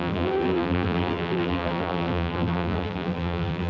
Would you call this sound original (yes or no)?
no